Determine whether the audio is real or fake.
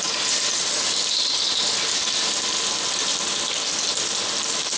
real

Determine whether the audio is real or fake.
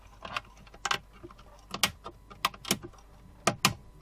real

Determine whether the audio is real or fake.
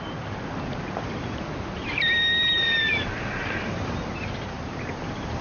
real